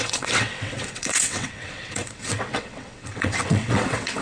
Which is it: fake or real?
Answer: fake